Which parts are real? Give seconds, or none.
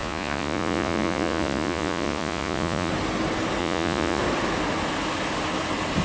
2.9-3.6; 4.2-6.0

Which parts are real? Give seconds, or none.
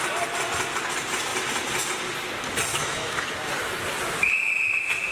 0.0-2.7; 3.7-5.1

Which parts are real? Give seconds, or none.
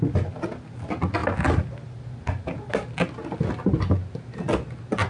0.0-5.1